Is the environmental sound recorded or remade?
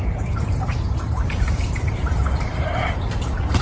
remade